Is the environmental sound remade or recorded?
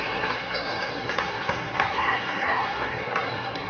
remade